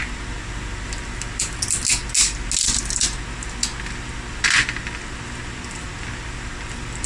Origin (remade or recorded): recorded